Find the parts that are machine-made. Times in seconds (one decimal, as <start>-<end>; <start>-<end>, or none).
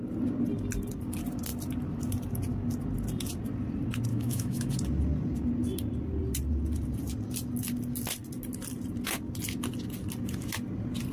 4.1-4.7